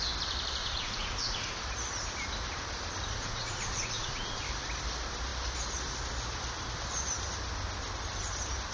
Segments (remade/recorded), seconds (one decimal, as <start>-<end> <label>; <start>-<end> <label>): 0.0-0.6 recorded; 0.6-1.6 remade; 1.6-3.2 recorded; 3.2-4.4 remade; 4.4-8.7 recorded